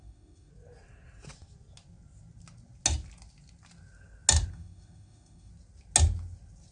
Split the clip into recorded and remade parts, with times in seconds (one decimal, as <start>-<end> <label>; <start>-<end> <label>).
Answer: 0.0-0.5 remade; 0.5-4.5 recorded; 4.5-5.5 remade; 5.5-6.7 recorded